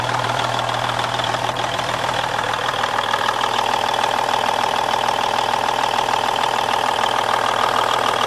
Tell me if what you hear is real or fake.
fake